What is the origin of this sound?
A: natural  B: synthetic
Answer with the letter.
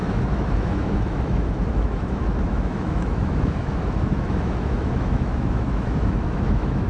B